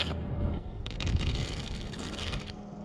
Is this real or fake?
fake